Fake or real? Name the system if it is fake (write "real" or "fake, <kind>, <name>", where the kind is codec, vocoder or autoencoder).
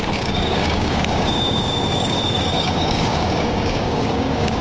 fake, codec, DAC